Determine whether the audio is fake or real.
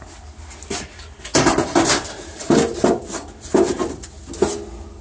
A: real